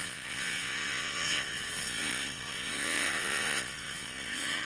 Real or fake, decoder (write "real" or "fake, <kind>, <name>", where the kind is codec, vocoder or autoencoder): fake, vocoder, Vocos